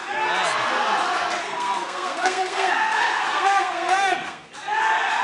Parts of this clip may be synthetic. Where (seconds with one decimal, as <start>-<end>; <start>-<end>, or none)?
1.4-4.5